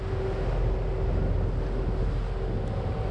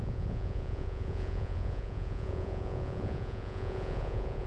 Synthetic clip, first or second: second